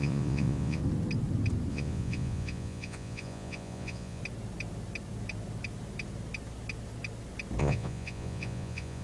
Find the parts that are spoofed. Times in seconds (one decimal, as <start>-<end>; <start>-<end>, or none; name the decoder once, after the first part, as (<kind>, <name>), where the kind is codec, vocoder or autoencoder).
0.0-0.8 (vocoder, Vocos); 1.7-4.2; 7.6-9.0